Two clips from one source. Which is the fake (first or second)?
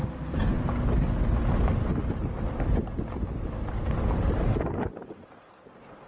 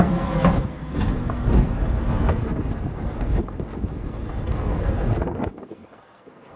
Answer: second